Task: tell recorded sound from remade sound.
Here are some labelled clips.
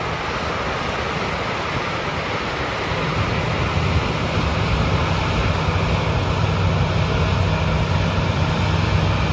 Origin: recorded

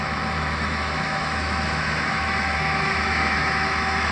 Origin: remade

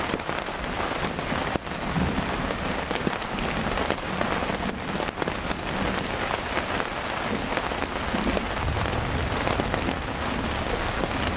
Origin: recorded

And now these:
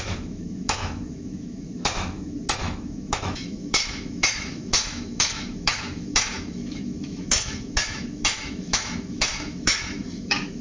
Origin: remade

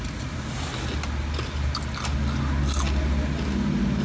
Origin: recorded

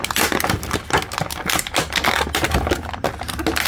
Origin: recorded